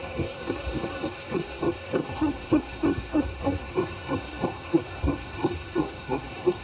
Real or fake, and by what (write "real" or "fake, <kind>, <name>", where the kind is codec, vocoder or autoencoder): fake, codec, SNAC